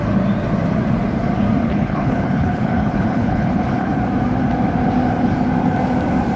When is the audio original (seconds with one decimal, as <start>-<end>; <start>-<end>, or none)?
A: 0.0-1.7; 3.9-6.4